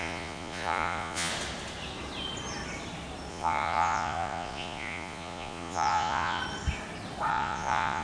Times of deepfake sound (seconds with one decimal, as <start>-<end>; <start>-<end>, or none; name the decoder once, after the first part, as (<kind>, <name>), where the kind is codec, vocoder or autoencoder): 0.0-1.3 (vocoder, Vocos); 3.3-6.4; 7.3-8.0